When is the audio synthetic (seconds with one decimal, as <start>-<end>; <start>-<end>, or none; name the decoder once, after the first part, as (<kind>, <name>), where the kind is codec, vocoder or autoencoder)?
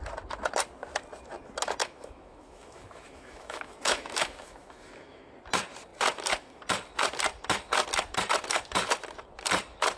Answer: 1.8-5.3 (autoencoder, DAC-VAE)